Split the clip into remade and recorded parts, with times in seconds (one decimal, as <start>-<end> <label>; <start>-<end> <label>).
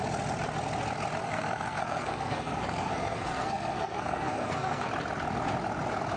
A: 0.0-1.2 recorded; 1.2-4.9 remade; 4.9-6.2 recorded